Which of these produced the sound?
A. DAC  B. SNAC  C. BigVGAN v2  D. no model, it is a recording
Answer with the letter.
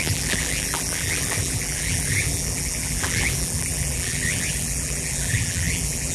C